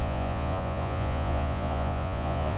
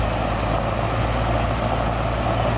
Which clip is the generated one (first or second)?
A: first